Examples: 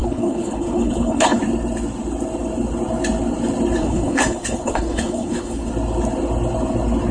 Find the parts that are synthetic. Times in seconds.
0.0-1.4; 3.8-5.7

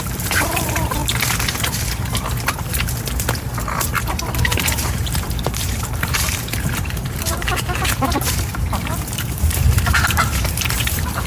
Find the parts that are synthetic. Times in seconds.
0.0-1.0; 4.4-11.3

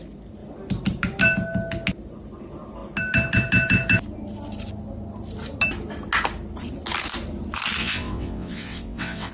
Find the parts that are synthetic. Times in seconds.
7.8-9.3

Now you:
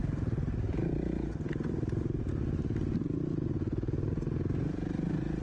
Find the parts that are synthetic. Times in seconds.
0.0-3.2

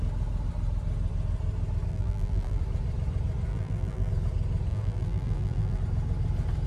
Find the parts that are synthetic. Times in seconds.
1.9-2.6; 3.5-4.1; 4.7-5.8